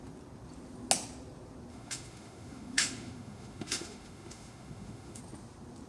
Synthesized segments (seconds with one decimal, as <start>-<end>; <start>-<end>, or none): 1.7-5.2